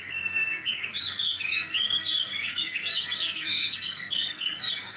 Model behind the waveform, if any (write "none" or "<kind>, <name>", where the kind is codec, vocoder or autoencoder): codec, SNAC